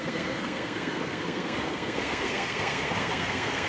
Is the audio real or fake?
fake